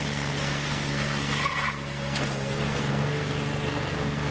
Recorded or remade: remade